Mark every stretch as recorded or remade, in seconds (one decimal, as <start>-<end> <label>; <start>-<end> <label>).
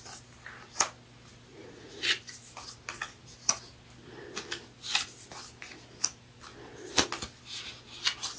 0.0-1.5 recorded; 1.5-2.0 remade; 2.0-8.4 recorded